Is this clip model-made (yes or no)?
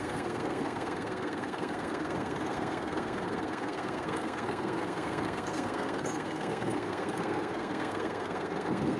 yes